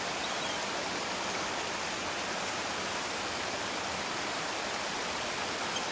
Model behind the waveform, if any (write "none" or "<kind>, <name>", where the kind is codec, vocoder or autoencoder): none